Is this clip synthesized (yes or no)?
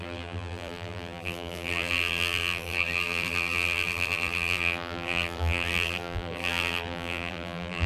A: yes